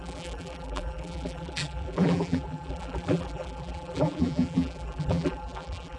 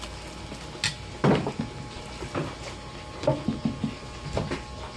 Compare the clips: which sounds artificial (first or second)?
first